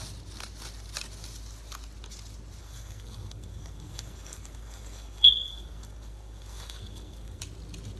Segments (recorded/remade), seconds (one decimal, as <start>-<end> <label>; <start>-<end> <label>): 0.0-2.6 recorded; 2.6-7.4 remade; 7.4-8.0 recorded